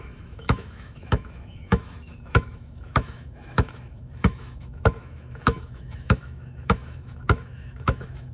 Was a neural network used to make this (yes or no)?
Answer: yes